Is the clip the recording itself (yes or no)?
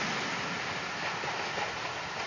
yes